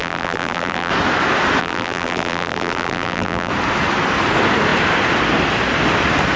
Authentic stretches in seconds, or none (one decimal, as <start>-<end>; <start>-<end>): 0.9-1.6; 3.5-6.4